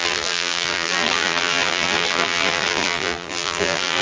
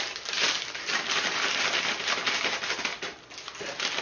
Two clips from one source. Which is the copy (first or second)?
first